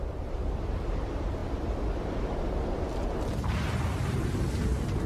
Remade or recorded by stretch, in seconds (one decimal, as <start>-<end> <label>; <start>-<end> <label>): 0.0-1.4 remade; 1.4-4.5 recorded; 4.5-5.1 remade